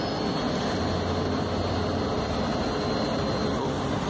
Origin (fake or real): real